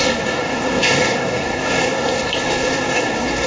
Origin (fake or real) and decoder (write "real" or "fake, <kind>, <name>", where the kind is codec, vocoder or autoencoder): fake, codec, SNAC